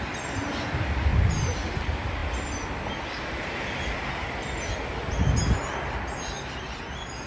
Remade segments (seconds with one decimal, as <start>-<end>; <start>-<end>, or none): 1.1-1.7

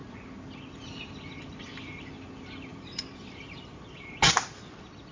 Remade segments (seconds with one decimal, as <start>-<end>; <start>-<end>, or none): 2.7-3.8

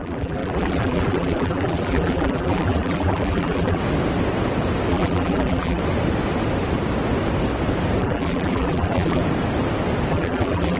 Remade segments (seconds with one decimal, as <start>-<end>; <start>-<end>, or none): 0.0-3.8; 4.9-5.8; 8.0-9.2; 10.1-10.8